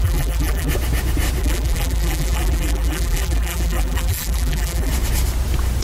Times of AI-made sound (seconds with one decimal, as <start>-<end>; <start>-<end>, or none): 0.0-0.7; 1.4-4.9